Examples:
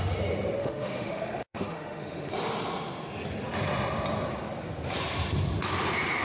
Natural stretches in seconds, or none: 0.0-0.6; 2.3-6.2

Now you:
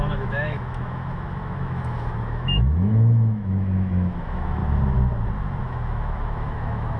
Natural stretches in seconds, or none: 4.6-5.6

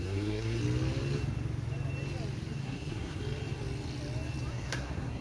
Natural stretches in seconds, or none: 0.6-2.6; 3.2-4.5

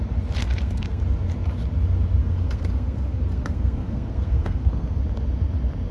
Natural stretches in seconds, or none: 0.0-0.4; 1.0-2.2; 5.0-5.9